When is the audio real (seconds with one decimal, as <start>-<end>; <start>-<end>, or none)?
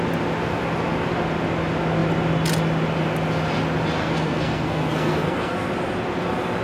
0.0-4.0; 5.7-6.6